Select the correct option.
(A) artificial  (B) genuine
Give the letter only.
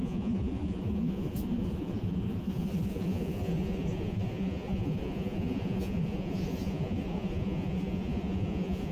A